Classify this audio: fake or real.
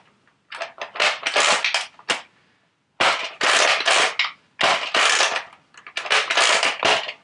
real